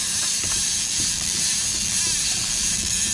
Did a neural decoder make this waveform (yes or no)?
yes